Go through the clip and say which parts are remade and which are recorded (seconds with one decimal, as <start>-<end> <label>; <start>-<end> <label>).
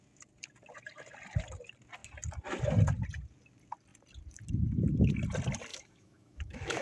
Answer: 0.0-5.7 recorded; 5.7-6.8 remade